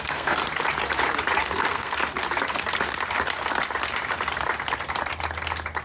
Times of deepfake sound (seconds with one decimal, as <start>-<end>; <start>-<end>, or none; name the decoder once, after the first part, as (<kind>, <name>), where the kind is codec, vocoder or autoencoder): 0.0-0.4 (codec, SNAC); 1.4-2.0